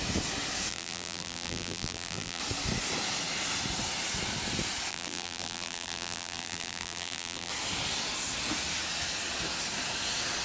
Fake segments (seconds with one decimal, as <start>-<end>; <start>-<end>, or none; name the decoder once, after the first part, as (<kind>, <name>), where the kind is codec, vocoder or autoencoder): 0.7-2.4 (vocoder, BigVGAN v2); 4.9-7.5